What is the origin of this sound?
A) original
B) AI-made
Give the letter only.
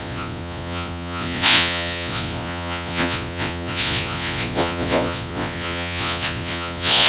B